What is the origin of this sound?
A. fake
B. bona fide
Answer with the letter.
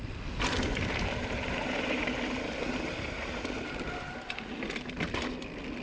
B